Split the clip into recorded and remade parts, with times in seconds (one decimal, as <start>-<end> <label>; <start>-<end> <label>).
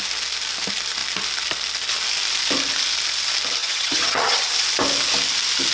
0.0-3.6 recorded; 3.6-4.5 remade; 4.5-5.7 recorded